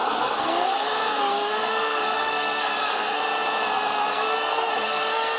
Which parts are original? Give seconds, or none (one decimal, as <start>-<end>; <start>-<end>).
3.2-4.1